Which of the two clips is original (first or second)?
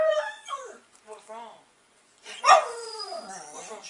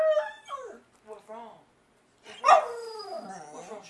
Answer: second